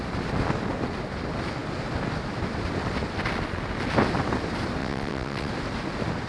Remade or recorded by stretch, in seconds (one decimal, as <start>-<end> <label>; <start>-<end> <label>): 0.0-4.8 recorded; 4.8-5.5 remade; 5.5-6.3 recorded